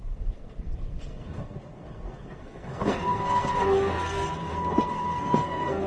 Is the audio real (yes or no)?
no